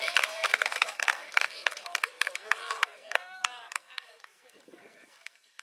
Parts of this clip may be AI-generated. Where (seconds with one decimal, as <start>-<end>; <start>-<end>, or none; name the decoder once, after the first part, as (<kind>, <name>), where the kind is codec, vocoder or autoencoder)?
0.0-5.6 (codec, SNAC)